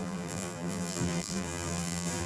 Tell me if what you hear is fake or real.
fake